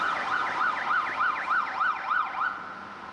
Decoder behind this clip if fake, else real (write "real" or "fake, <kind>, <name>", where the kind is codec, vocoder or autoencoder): real